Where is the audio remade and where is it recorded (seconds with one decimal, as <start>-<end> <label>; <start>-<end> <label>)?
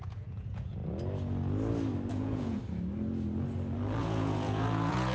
0.0-0.8 remade; 0.8-2.1 recorded; 2.1-2.6 remade; 2.6-4.0 recorded; 4.0-5.1 remade